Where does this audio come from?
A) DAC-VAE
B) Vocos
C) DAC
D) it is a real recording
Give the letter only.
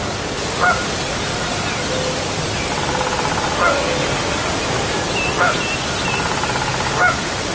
D